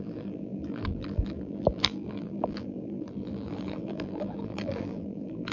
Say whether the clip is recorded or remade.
remade